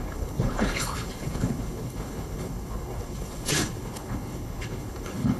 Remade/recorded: remade